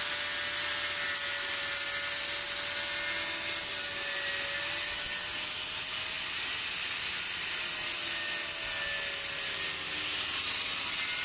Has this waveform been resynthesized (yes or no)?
no